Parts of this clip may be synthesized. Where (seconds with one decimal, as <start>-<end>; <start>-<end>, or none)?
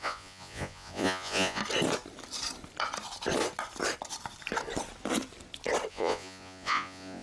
0.0-1.6; 5.9-7.2